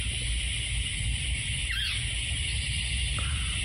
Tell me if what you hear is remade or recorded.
recorded